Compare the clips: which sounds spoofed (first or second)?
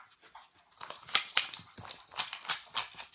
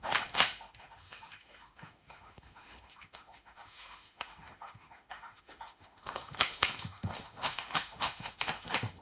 second